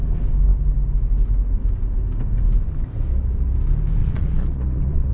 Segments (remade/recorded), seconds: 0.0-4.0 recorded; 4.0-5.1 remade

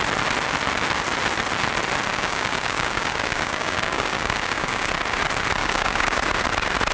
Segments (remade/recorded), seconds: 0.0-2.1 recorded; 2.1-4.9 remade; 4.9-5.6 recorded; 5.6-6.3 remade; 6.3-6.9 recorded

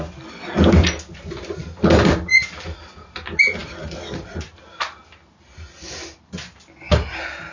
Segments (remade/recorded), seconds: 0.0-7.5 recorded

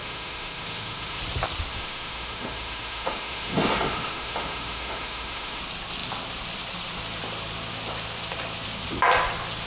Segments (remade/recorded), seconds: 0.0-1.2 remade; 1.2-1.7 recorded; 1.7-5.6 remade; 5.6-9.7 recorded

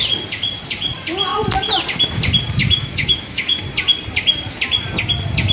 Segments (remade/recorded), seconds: 0.0-2.6 recorded; 2.6-3.6 remade; 3.6-5.5 recorded

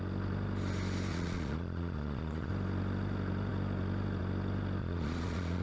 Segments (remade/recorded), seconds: 0.0-1.1 recorded; 1.1-2.5 remade; 2.5-4.8 recorded; 4.8-5.6 remade

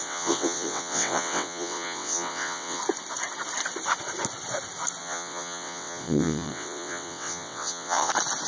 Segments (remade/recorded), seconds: 0.0-2.8 remade; 2.8-5.0 recorded; 5.0-8.1 remade; 8.1-8.5 recorded